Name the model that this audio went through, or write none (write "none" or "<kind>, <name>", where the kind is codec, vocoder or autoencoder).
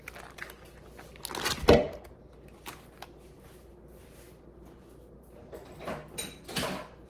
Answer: none